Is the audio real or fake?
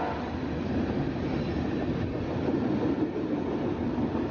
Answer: real